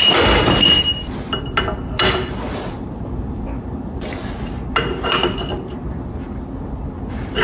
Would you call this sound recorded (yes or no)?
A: yes